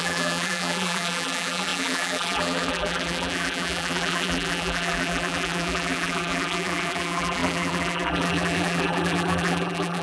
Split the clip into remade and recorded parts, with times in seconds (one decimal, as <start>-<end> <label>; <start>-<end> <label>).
0.0-10.0 remade